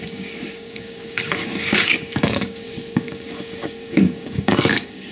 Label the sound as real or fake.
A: fake